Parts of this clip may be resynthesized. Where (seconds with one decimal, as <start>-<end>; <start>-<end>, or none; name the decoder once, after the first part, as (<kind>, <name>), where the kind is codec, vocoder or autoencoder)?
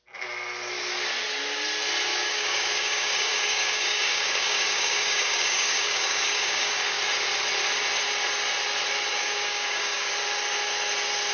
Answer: 2.1-7.0 (codec, DAC); 9.1-10.1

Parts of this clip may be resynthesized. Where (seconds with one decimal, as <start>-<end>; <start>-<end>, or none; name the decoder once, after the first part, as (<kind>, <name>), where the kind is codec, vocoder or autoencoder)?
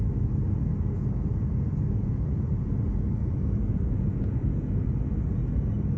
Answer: 1.3-2.8 (vocoder, Vocos); 3.2-5.1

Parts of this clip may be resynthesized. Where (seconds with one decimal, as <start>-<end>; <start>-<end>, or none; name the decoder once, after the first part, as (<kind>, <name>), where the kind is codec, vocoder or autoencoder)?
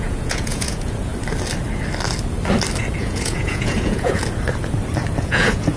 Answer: 0.0-1.1 (vocoder, Vocos); 3.0-4.2; 5.2-5.8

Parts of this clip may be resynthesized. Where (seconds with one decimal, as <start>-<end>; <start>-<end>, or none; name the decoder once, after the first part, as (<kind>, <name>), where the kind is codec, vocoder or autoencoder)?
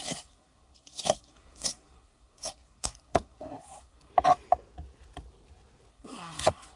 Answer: 0.0-4.1 (codec, SNAC); 5.9-6.8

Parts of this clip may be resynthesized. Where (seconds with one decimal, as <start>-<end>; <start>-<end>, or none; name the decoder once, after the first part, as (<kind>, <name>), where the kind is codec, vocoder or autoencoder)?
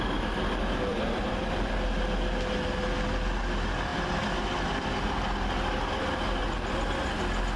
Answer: 0.9-1.7 (vocoder, BigVGAN v2)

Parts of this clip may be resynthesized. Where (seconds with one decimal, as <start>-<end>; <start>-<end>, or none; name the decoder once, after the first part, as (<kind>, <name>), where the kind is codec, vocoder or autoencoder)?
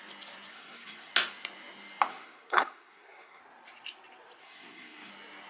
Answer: 0.5-1.1 (codec, SNAC); 2.1-3.4; 4.4-5.1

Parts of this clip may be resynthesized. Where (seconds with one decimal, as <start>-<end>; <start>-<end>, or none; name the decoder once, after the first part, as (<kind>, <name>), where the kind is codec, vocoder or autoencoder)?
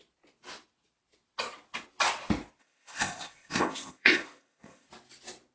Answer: 2.6-4.9 (codec, ZipCodec)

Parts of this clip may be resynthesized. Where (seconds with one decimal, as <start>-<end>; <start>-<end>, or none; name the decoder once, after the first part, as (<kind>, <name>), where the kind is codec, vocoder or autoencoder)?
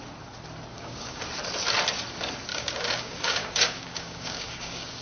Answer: 0.7-1.2 (codec, DAC); 2.5-5.0